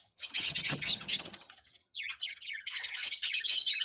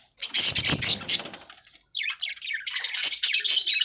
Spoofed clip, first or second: first